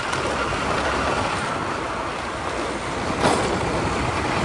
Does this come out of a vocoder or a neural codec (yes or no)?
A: no